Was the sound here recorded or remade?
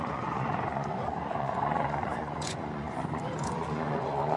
remade